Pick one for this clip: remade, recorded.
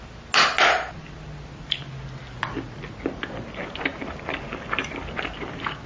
recorded